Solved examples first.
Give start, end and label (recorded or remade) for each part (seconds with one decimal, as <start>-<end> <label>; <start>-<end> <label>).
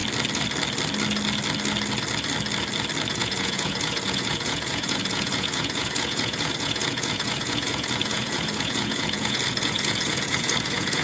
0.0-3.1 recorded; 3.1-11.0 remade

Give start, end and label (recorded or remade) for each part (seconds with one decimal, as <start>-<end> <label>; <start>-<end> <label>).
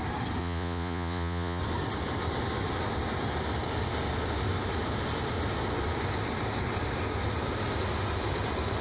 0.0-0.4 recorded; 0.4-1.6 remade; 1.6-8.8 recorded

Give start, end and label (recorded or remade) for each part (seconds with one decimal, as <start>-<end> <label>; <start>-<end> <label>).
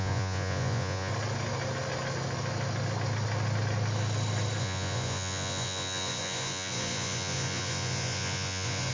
0.0-1.1 remade; 1.1-4.6 recorded; 4.6-8.9 remade